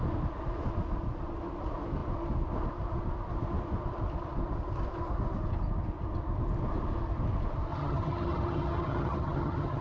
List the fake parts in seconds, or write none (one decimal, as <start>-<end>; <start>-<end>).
7.7-9.8